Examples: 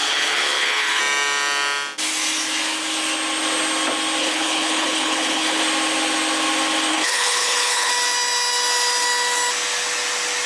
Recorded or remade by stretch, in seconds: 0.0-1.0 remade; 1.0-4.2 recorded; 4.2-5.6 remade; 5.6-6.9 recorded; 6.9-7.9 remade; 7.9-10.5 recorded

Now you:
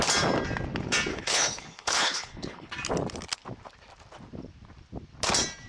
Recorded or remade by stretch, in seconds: 0.0-1.1 recorded; 1.1-2.7 remade; 2.7-5.7 recorded

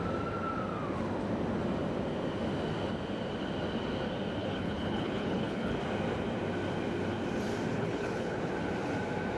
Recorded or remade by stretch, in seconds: 0.0-4.4 recorded; 4.4-5.8 remade; 5.8-7.7 recorded; 7.7-8.5 remade; 8.5-9.4 recorded

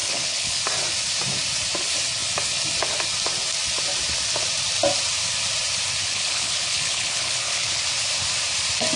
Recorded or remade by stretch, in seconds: 0.0-0.6 remade; 0.6-6.0 recorded; 6.0-7.8 remade; 7.8-9.0 recorded

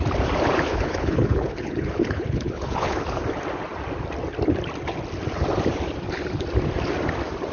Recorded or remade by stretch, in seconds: 0.0-0.7 recorded; 0.7-3.2 remade; 3.2-7.5 recorded

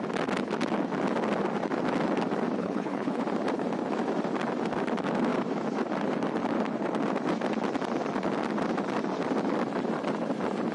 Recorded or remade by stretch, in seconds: 0.0-2.6 recorded; 2.6-3.2 remade; 3.2-10.7 recorded